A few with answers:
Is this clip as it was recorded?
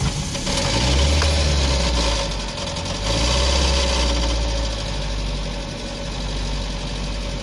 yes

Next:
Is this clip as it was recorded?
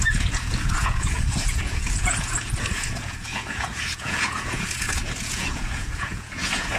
no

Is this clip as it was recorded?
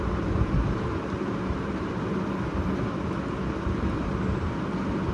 yes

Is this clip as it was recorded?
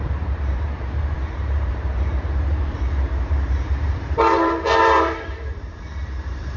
no